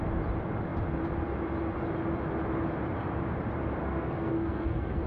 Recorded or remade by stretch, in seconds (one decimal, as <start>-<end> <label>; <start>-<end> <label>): 0.0-3.8 recorded; 3.8-5.1 remade